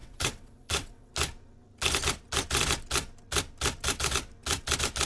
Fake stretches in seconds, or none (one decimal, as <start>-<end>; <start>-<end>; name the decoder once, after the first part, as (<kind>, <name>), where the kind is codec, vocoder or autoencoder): 0.0-1.1 (vocoder, WaveNeXt)